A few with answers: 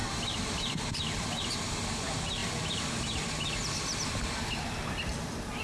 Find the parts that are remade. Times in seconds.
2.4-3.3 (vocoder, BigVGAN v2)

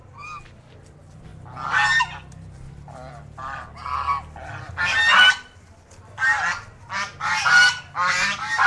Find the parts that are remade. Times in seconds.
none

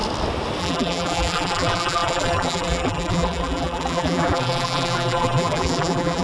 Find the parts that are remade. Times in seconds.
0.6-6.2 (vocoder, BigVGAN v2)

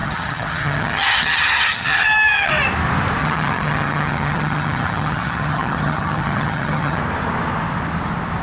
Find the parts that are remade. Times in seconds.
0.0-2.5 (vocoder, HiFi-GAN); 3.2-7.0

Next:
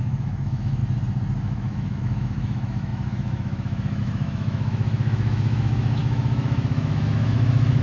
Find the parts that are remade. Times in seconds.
0.0-0.8 (autoencoder, DAC-VAE); 1.4-7.8